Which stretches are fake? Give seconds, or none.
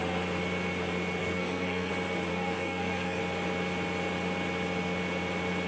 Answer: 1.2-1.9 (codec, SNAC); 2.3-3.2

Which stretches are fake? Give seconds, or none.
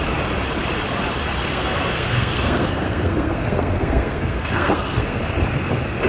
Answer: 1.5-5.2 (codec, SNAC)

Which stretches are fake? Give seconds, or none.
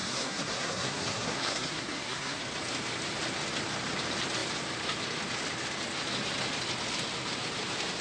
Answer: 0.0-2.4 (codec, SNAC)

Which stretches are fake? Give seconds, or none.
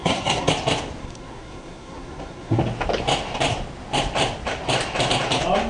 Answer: 0.0-0.5 (codec, SNAC); 1.0-2.6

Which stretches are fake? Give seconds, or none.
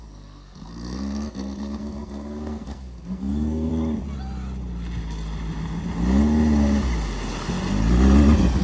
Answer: 0.0-3.7 (codec, SNAC)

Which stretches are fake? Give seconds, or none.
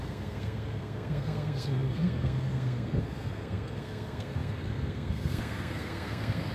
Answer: 0.0-6.5 (codec, SNAC)